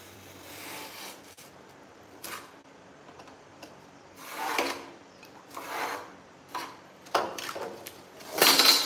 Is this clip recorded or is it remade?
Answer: remade